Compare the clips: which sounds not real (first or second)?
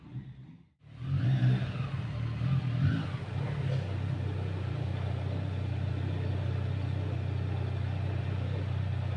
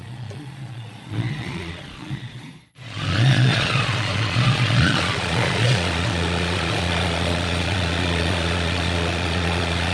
second